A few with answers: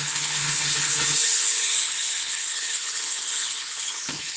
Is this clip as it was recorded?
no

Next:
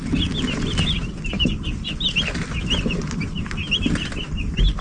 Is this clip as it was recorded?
yes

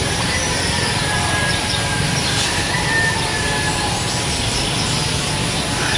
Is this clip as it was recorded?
yes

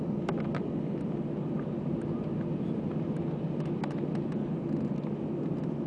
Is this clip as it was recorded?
yes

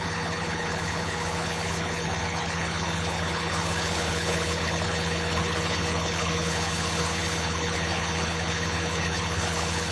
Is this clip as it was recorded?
no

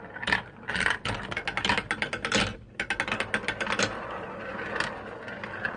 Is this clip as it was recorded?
yes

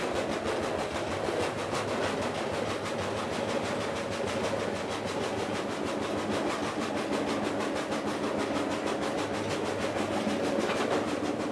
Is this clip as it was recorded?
yes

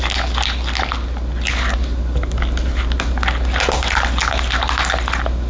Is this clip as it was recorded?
yes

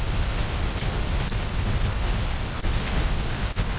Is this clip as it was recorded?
no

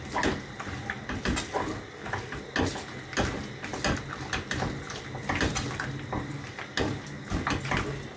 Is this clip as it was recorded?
yes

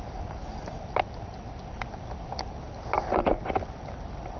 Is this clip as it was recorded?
yes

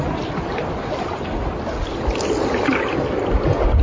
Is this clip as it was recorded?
yes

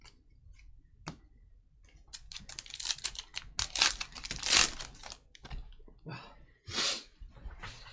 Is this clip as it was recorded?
yes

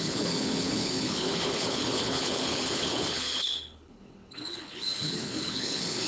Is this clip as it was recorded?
no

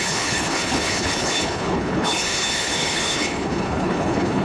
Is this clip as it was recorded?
no